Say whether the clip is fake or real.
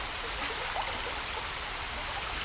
real